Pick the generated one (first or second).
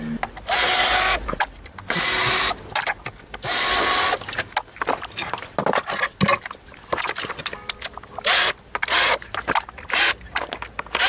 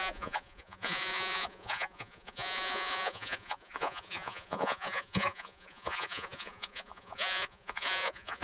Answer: second